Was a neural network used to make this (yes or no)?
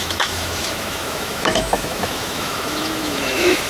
yes